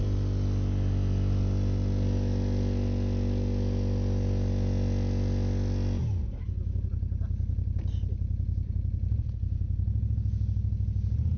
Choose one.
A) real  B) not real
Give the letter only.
A